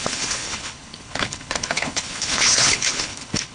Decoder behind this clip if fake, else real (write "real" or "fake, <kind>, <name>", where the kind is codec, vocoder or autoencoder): fake, codec, HILCodec